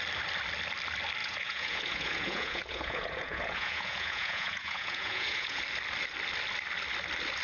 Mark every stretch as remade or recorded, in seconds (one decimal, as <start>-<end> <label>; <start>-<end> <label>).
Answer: 0.0-1.2 recorded; 1.2-5.6 remade; 5.6-7.4 recorded